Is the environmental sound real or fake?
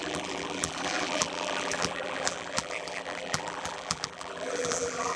fake